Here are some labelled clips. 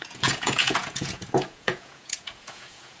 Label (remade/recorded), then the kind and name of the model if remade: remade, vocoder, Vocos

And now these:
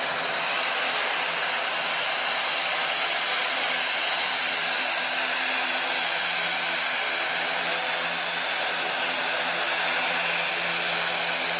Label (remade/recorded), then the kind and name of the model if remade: recorded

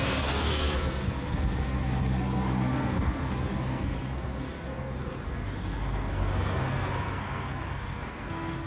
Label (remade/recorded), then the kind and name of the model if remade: remade, codec, SNAC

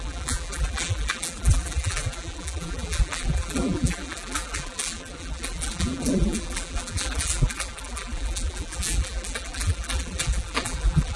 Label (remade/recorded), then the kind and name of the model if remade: remade, vocoder, BigVGAN v2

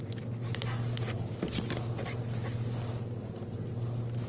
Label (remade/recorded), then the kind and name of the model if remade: recorded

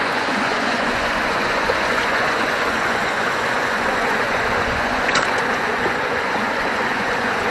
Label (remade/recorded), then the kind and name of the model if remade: remade, vocoder, Vocos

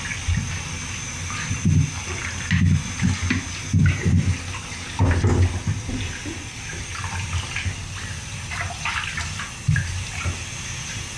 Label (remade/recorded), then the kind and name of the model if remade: recorded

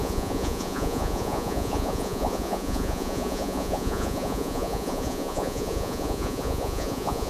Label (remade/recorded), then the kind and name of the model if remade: remade, vocoder, Vocos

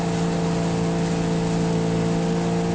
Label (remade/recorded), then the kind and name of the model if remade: recorded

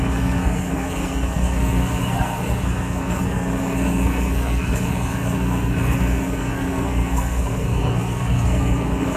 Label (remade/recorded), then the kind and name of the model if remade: remade, codec, SNAC